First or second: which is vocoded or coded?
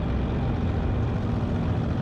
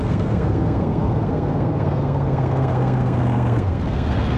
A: second